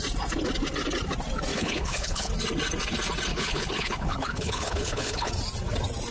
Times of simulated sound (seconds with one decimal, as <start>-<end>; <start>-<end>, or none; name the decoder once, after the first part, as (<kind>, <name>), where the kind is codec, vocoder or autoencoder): 1.5-2.3 (codec, HILCodec); 3.3-5.3